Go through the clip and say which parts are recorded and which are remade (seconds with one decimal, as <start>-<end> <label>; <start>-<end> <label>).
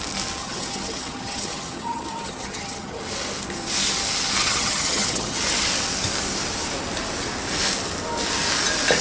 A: 0.0-0.4 recorded; 0.4-3.0 remade; 3.0-4.4 recorded; 4.4-5.4 remade; 5.4-9.0 recorded